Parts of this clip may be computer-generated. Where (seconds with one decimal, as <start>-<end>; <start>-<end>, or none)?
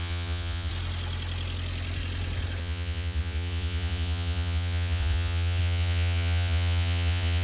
0.0-0.7; 2.6-7.4